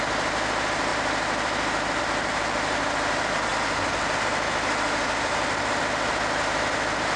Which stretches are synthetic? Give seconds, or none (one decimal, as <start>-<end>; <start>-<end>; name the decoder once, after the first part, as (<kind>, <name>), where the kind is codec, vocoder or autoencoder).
none